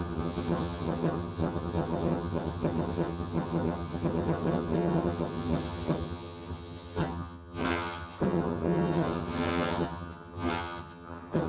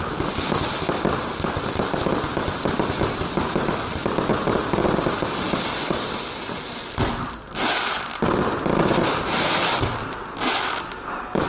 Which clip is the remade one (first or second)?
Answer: first